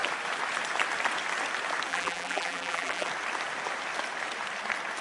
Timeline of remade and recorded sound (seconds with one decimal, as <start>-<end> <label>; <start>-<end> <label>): 0.0-1.9 recorded; 1.9-3.1 remade; 3.1-5.0 recorded